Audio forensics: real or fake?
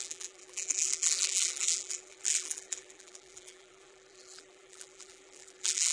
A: fake